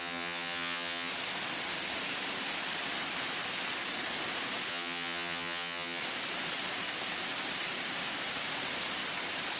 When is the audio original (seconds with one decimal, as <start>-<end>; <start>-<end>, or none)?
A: 1.1-4.7; 6.0-9.6